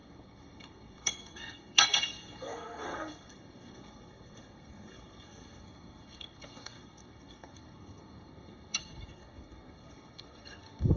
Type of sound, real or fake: fake